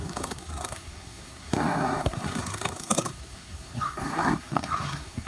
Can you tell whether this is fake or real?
fake